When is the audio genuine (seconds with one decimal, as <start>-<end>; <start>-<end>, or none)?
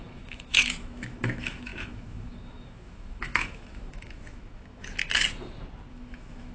5.0-5.9